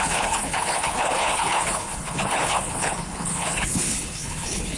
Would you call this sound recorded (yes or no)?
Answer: no